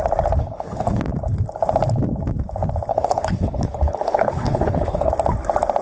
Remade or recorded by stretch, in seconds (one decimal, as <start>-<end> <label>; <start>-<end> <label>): 0.0-0.4 recorded; 0.4-1.0 remade; 1.0-2.9 recorded; 2.9-5.1 remade; 5.1-5.8 recorded